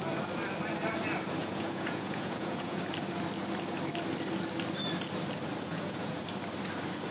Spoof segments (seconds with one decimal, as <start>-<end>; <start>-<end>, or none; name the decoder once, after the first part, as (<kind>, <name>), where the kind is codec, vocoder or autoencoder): 1.4-2.8 (vocoder, Vocos); 5.7-6.2